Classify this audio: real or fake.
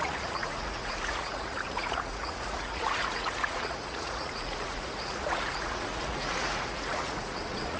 fake